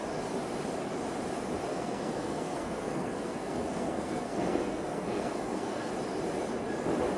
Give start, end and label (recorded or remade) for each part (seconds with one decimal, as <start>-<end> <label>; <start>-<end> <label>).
0.0-1.7 recorded; 1.7-5.9 remade; 5.9-7.2 recorded